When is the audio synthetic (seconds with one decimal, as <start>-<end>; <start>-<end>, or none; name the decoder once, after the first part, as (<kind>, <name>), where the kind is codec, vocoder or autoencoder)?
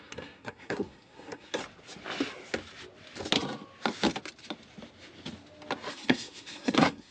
0.0-1.6 (codec, SNAC); 5.9-7.1